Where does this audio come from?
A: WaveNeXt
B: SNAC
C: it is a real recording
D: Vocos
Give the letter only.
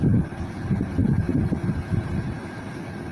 C